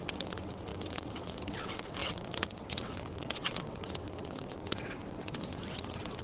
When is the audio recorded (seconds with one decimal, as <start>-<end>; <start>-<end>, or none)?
none